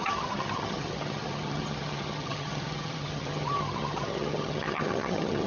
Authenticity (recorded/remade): remade